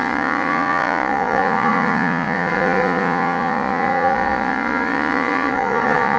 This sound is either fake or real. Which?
fake